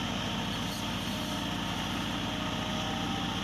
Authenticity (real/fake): real